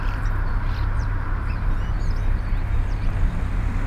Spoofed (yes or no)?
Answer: yes